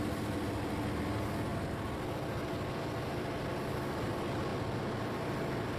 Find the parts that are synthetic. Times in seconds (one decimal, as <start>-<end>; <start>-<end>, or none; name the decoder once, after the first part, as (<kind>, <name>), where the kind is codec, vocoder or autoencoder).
none